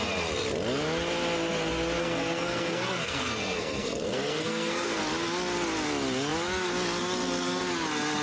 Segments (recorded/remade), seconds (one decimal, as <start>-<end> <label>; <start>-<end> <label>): 0.0-2.0 recorded; 2.0-5.0 remade; 5.0-8.2 recorded